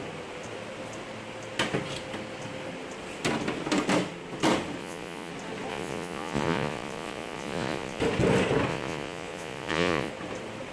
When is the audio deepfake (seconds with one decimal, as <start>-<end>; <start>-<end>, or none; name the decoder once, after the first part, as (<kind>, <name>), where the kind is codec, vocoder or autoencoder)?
4.8-5.3 (vocoder, Vocos); 5.7-8.0; 8.7-10.1

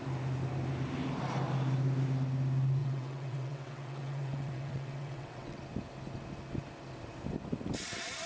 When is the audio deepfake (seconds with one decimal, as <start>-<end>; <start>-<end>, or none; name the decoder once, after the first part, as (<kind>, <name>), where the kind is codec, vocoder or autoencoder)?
2.8-5.6 (vocoder, WaveNeXt)

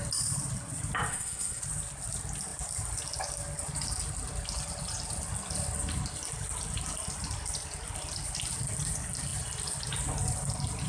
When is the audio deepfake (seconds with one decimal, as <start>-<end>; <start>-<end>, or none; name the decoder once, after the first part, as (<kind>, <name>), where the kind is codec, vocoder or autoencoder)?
1.1-1.6 (codec, SNAC)

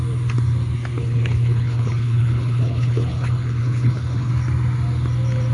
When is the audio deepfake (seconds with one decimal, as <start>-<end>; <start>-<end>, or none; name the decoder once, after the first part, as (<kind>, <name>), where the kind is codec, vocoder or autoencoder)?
1.0-4.3 (codec, HILCodec)

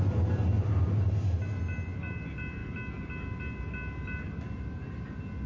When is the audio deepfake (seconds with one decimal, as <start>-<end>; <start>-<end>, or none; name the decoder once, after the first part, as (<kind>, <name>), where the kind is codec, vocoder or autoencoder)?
none

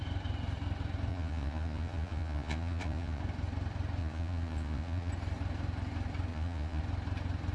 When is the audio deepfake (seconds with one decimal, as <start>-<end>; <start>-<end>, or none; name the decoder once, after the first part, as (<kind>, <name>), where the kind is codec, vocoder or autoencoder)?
1.1-3.2 (vocoder, Vocos); 4.0-5.1; 6.3-6.8